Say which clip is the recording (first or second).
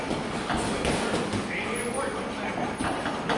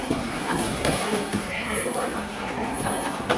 first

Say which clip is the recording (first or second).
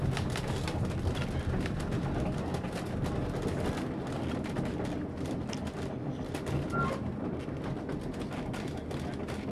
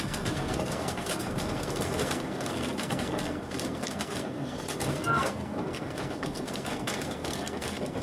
first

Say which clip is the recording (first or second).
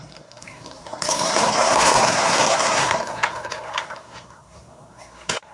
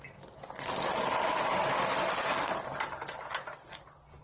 second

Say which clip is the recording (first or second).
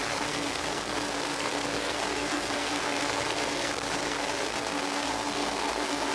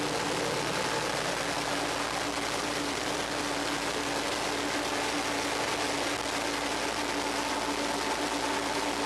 second